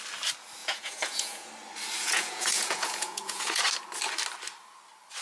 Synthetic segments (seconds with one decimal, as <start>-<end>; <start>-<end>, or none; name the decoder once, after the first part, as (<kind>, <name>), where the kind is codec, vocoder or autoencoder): 0.6-1.5 (vocoder, Vocos); 2.0-3.6